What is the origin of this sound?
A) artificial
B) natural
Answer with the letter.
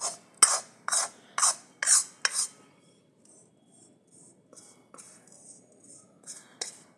B